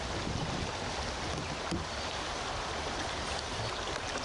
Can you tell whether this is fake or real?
real